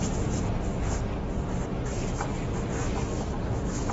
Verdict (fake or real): real